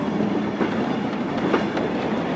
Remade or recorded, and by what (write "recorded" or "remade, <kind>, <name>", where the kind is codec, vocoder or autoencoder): recorded